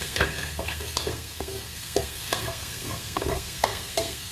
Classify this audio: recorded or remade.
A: remade